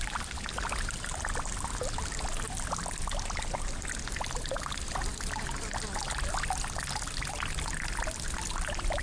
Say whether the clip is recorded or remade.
recorded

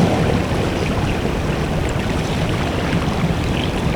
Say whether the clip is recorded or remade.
recorded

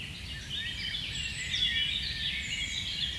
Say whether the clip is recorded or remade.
recorded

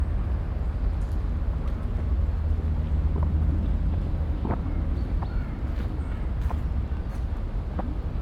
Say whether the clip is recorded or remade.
recorded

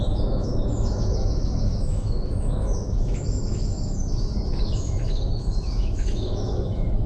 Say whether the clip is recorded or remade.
remade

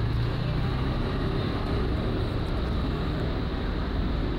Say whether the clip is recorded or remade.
recorded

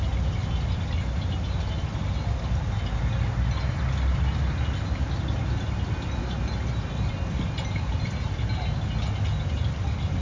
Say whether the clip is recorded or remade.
recorded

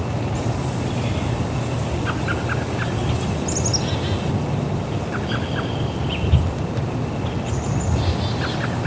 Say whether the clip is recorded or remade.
recorded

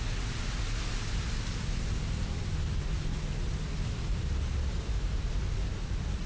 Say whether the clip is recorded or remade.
recorded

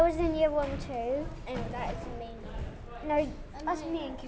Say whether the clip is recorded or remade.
recorded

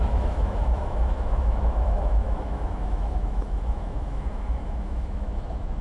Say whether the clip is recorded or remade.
remade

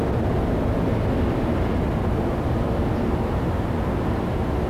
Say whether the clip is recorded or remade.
recorded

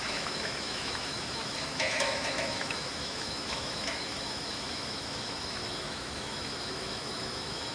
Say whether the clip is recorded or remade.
remade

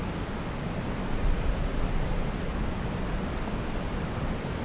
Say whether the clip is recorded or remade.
recorded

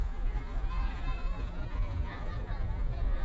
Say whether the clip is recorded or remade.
remade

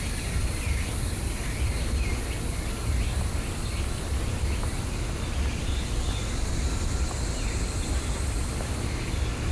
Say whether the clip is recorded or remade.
recorded